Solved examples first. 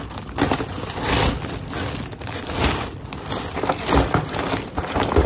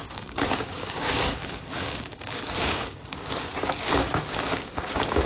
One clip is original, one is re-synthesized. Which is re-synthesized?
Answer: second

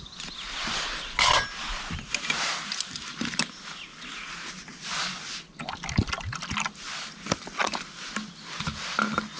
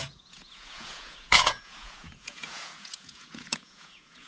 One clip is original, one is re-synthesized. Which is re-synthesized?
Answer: second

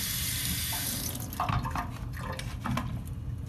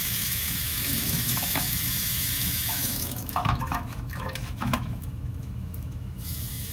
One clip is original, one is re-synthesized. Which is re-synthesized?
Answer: second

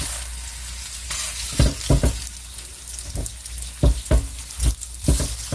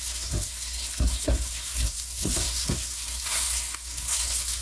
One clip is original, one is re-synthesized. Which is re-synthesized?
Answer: second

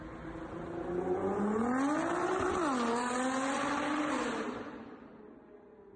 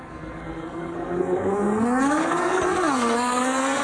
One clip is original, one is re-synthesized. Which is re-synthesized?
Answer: second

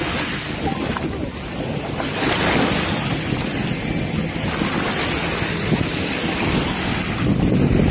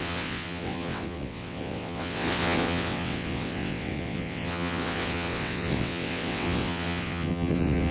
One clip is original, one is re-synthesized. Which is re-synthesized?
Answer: second